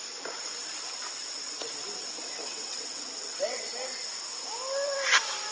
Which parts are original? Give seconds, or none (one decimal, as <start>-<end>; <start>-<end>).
0.0-2.4; 3.7-5.5